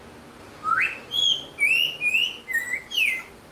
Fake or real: real